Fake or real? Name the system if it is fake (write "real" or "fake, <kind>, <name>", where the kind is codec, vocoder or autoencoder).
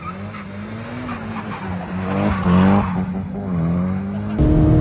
real